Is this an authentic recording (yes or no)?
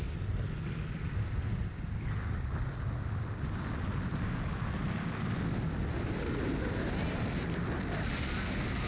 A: yes